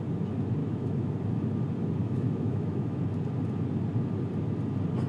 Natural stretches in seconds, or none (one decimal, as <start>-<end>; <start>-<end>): 0.0-0.6; 1.1-2.0; 3.0-5.1